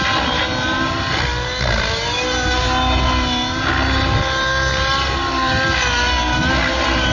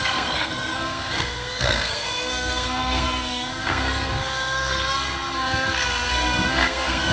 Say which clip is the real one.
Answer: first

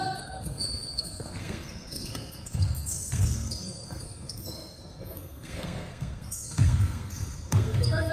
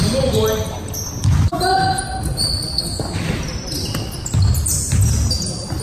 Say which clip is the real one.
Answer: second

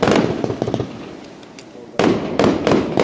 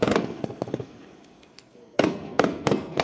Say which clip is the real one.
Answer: first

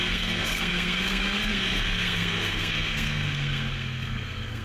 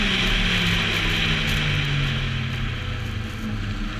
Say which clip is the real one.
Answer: second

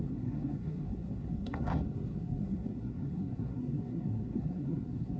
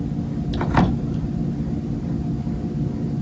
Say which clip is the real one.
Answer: second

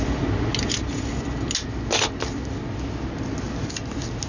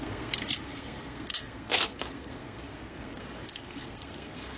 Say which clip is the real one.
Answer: first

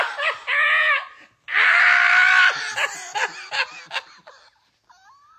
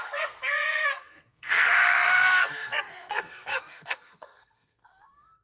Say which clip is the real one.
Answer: first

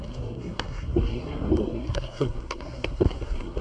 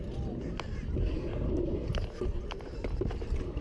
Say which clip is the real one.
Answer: second